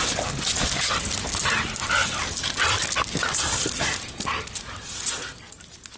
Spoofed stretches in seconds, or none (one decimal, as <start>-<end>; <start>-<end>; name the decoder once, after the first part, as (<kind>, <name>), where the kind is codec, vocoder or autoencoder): none